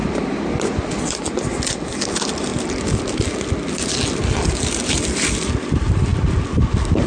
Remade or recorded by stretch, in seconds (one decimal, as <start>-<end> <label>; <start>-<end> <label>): 0.0-7.1 recorded